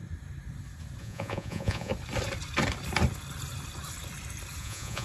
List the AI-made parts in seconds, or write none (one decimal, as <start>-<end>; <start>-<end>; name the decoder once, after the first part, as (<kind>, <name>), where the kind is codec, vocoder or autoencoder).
1.0-1.9 (vocoder, Vocos); 4.6-5.0